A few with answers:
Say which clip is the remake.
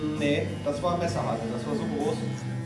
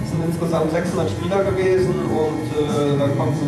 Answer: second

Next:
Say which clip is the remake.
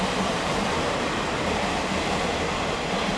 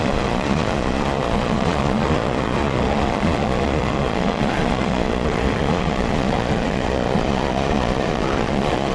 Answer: second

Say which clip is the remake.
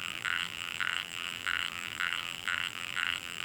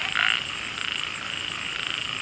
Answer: first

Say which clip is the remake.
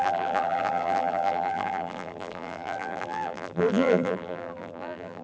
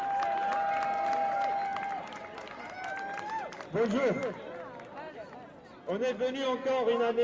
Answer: first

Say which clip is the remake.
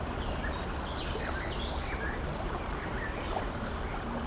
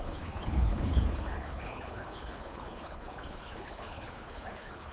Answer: second